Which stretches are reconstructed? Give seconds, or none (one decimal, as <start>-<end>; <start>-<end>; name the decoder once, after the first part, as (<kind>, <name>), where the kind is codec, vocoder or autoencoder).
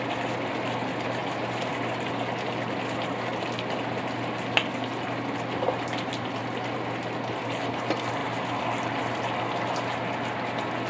none